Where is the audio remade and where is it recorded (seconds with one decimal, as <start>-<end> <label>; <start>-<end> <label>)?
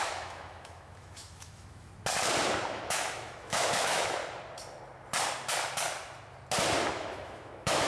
0.0-1.9 remade; 1.9-2.7 recorded; 2.7-4.2 remade; 4.2-6.9 recorded; 6.9-7.9 remade